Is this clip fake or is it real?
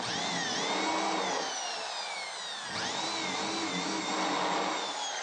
real